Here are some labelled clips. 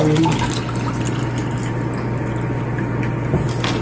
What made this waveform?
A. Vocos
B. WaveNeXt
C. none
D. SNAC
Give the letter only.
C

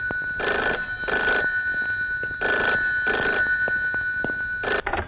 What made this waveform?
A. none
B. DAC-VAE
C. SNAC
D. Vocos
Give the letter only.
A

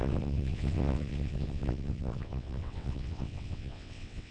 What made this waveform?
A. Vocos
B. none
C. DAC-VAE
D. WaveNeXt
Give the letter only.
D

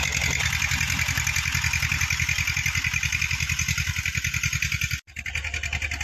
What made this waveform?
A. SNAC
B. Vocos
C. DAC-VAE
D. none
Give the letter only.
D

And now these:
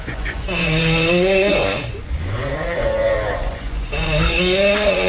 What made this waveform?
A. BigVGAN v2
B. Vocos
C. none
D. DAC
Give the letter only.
B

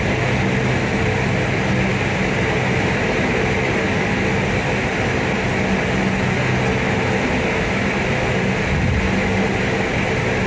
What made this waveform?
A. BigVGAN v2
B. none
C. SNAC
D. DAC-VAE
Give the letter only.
B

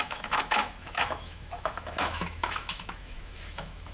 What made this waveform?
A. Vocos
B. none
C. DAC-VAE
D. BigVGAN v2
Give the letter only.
C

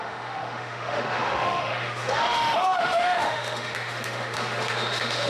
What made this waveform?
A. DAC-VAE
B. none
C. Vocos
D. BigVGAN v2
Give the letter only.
A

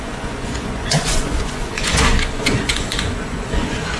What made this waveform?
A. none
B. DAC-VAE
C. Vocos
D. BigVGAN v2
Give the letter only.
C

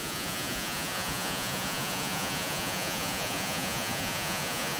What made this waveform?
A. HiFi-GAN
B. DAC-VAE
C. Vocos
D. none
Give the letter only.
C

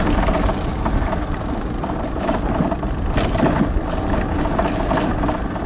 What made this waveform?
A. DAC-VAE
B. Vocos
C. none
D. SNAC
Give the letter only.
C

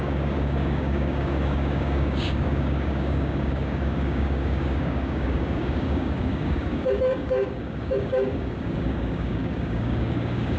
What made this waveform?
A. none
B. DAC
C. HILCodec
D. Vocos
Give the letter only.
B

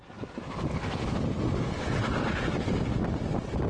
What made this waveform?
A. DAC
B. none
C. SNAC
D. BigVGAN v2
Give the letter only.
B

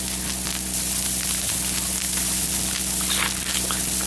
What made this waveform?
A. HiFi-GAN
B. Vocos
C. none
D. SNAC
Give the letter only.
C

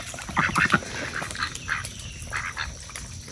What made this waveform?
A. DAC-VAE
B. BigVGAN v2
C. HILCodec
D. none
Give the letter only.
D